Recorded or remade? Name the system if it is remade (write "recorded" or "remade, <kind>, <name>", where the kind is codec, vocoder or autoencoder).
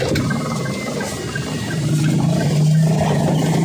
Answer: recorded